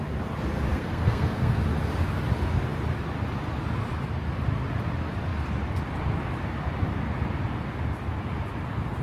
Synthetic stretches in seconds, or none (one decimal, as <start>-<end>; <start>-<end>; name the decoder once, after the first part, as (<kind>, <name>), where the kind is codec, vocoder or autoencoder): 0.7-1.6 (codec, SNAC)